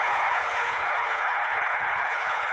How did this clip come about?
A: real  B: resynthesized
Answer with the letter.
B